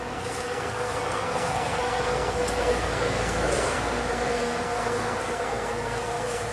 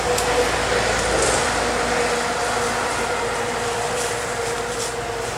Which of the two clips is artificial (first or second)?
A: first